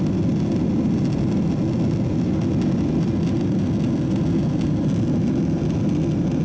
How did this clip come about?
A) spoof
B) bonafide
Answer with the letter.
B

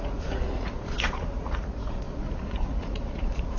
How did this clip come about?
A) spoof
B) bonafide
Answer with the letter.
A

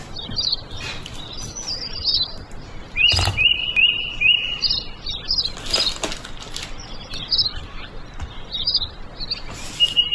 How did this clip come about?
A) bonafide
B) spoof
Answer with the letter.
A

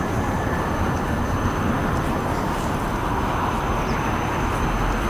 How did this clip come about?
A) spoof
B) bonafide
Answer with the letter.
B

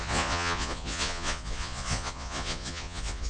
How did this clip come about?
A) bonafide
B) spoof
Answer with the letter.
B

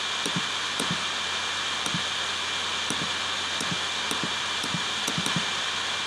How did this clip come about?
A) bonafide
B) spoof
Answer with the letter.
A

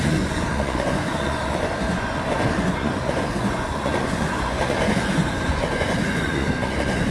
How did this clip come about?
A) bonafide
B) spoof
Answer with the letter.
B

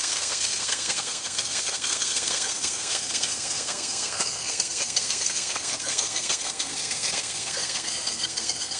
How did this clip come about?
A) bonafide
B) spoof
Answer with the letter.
B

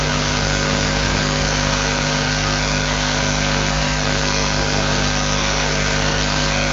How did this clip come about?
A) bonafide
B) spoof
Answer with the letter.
B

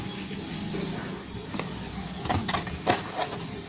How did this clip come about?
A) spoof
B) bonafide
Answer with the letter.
B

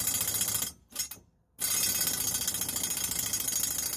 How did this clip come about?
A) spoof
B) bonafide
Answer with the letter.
B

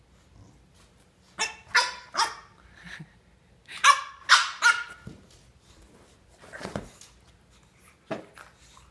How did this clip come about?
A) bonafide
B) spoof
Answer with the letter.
A